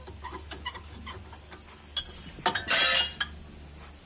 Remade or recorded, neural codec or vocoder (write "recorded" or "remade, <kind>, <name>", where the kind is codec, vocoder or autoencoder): recorded